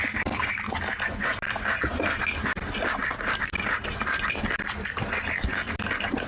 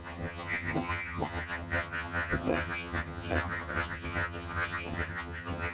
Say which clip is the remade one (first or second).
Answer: second